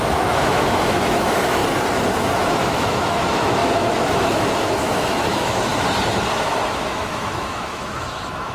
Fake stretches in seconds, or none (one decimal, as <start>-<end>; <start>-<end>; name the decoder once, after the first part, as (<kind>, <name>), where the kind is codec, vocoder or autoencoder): 0.0-1.6 (autoencoder, DAC-VAE); 2.2-5.7; 6.7-8.5